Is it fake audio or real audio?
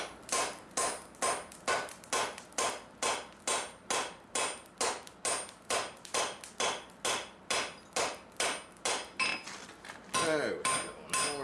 real